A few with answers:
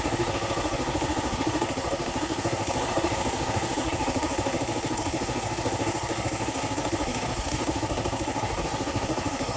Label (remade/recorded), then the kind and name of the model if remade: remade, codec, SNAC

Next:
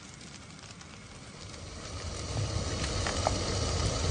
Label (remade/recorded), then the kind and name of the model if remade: recorded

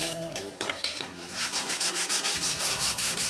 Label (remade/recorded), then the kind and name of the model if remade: remade, codec, SNAC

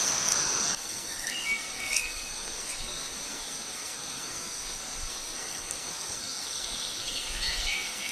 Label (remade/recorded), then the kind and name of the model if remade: remade, codec, SNAC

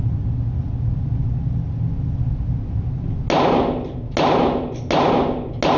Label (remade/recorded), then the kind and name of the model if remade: recorded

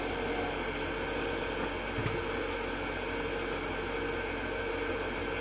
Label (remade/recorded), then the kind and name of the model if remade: recorded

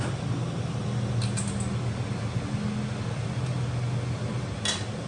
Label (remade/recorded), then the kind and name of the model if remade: recorded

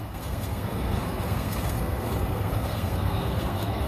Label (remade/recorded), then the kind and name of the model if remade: remade, codec, SNAC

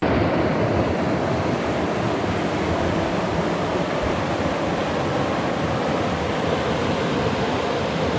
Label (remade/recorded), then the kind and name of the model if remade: recorded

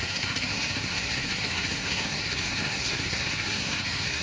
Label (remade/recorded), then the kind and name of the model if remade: remade, codec, SNAC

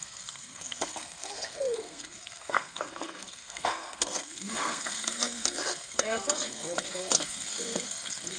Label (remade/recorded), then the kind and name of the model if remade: remade, codec, SNAC